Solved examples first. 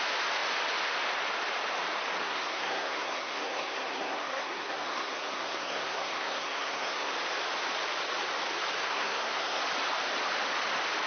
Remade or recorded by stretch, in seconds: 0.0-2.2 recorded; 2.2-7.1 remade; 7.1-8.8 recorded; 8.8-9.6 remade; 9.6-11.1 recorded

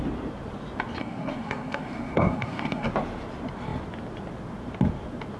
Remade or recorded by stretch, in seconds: 0.0-1.0 recorded; 1.0-2.9 remade; 2.9-5.4 recorded

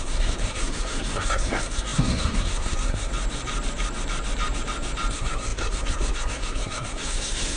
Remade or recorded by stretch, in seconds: 0.0-3.1 remade; 3.1-5.1 recorded; 5.1-7.6 remade

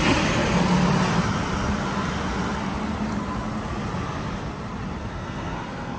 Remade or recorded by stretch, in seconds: 0.0-5.0 recorded; 5.0-6.0 remade

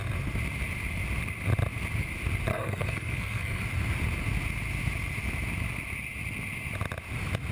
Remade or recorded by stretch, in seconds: 0.0-2.5 recorded; 2.5-3.6 remade; 3.6-7.5 recorded

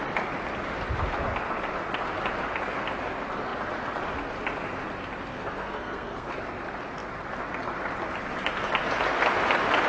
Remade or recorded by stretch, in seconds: 0.0-5.3 recorded; 5.3-6.3 remade; 6.3-9.9 recorded

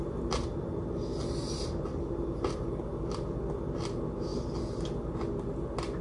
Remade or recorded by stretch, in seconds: 0.0-6.0 recorded

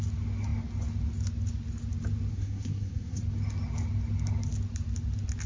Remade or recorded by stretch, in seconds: 0.0-2.3 recorded; 2.3-3.2 remade; 3.2-5.5 recorded